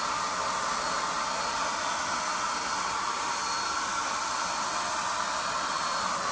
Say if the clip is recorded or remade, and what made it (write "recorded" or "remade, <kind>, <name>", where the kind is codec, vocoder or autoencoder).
recorded